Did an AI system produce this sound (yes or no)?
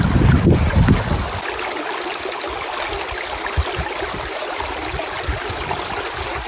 no